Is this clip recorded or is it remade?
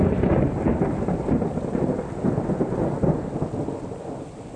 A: recorded